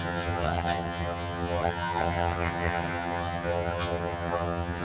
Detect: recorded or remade remade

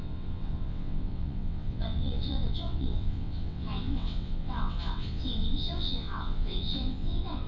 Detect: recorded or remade remade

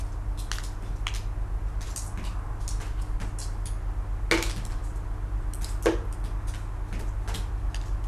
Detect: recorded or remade recorded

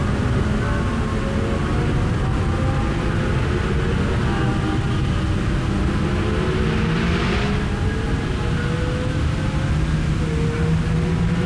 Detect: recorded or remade recorded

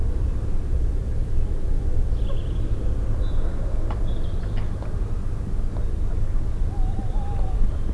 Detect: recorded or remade recorded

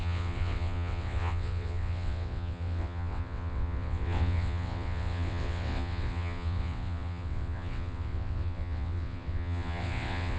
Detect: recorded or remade remade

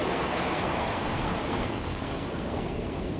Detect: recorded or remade remade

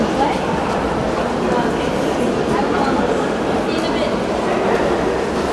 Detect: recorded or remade recorded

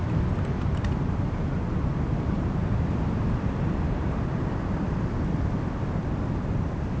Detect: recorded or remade recorded